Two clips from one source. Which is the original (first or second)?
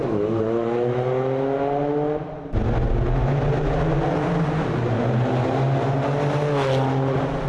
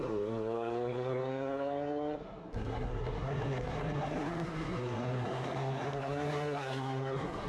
first